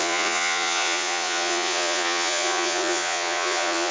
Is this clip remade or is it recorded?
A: remade